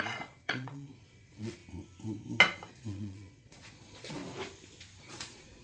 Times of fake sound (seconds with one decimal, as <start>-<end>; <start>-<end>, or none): 0.0-1.6; 2.7-4.2; 5.0-5.6